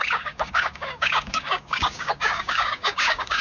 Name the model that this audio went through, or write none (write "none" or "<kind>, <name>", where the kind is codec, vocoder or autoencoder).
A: codec, DAC